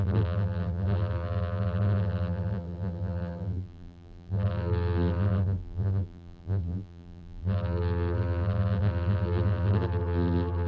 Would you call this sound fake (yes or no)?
yes